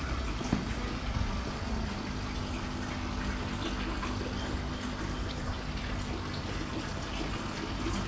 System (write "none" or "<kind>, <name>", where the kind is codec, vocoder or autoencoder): none